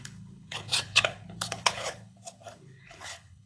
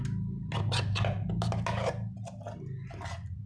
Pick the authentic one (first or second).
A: second